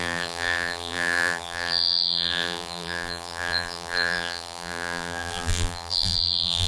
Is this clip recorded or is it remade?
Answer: remade